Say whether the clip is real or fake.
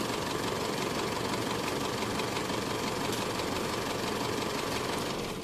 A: real